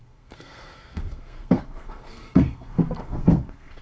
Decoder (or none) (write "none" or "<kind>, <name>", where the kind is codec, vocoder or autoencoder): codec, SNAC